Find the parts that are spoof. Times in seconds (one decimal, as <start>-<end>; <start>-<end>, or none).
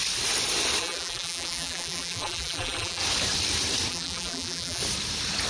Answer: 0.8-3.0; 3.9-4.8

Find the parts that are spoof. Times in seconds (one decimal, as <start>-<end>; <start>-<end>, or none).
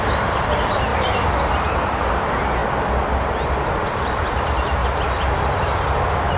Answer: 0.0-0.9; 1.6-2.6; 3.3-4.8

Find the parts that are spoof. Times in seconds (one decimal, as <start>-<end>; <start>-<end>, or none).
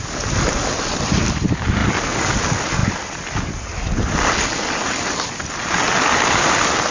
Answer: none